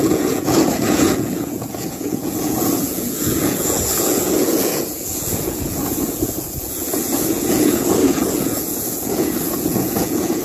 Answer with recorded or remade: remade